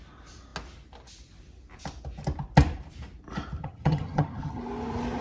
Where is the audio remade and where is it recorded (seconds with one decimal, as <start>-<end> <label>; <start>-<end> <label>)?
0.0-3.6 recorded; 3.6-4.6 remade; 4.6-5.2 recorded